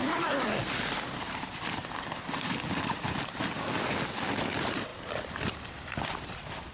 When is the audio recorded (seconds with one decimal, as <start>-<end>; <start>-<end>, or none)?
3.5-4.9; 6.3-6.7

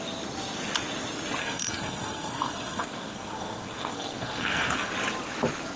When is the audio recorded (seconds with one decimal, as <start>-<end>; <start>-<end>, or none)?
0.0-1.4; 4.9-5.8